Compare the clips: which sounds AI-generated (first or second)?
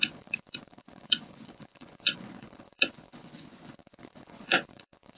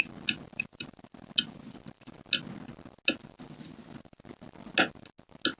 first